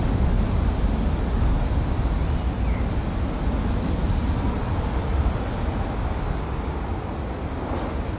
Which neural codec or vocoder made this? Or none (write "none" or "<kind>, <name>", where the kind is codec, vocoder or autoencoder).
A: none